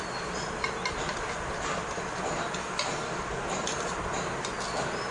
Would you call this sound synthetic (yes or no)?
no